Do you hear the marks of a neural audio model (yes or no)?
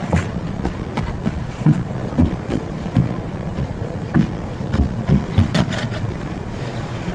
yes